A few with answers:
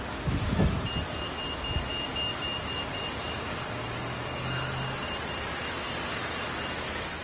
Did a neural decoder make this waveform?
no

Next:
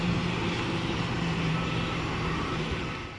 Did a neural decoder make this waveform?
yes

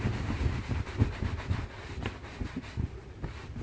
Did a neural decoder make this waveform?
yes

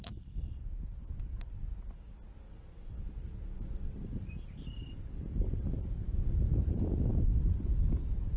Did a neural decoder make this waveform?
no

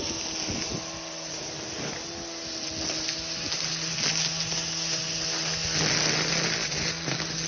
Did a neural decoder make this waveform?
no